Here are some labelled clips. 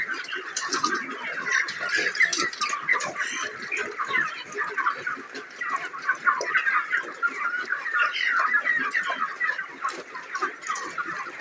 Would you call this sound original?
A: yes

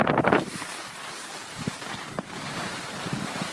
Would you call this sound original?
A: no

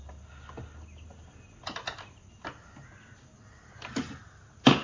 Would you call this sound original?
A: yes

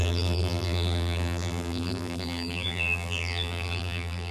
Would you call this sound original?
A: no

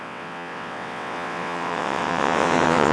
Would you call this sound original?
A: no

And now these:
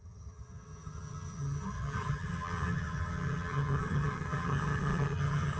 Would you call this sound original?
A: no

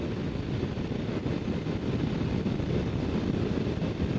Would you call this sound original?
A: yes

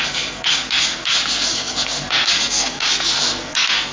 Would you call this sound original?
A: no